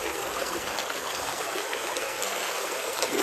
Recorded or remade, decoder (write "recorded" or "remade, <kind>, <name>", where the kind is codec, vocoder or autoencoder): remade, codec, SNAC